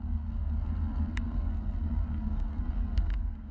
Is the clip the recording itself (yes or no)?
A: no